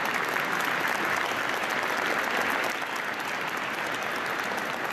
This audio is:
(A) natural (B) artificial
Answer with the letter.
A